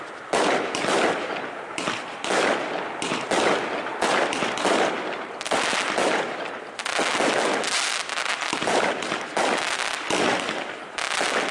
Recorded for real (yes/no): yes